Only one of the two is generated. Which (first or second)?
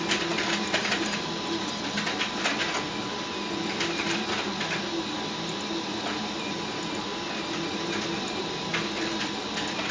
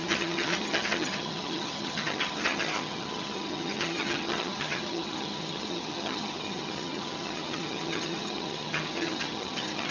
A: second